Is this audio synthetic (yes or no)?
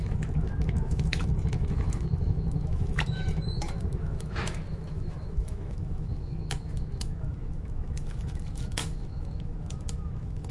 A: yes